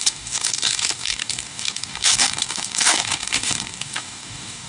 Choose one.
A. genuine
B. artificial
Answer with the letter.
B